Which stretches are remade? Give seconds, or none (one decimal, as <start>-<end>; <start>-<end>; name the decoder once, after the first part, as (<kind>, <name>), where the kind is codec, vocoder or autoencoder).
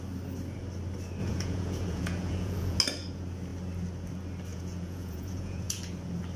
1.2-2.8 (vocoder, Vocos); 4.5-5.8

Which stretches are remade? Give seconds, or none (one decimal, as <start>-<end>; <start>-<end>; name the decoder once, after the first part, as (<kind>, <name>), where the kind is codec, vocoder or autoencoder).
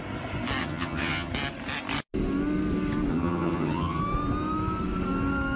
0.6-1.3 (vocoder, HiFi-GAN); 3.1-4.0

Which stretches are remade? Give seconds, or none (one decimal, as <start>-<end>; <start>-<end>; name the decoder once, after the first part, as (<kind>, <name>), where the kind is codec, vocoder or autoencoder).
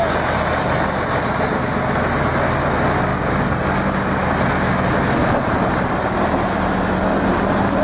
3.1-3.6 (vocoder, BigVGAN v2); 5.2-6.2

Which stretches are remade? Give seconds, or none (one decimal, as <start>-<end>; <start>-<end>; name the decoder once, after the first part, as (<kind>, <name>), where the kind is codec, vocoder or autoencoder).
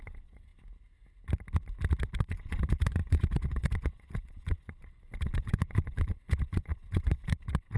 0.0-0.5 (vocoder, WaveNeXt); 2.0-7.8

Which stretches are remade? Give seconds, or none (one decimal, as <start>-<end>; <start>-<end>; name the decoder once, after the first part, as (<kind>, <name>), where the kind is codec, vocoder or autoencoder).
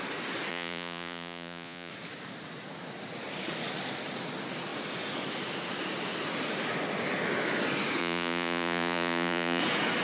0.5-1.9 (vocoder, Vocos); 8.0-9.6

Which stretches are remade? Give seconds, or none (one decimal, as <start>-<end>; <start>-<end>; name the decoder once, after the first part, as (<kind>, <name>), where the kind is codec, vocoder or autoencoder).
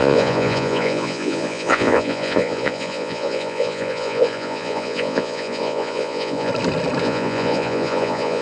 0.0-6.5 (vocoder, Vocos); 7.0-8.4